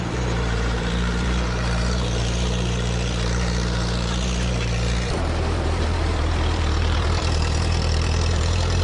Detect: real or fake fake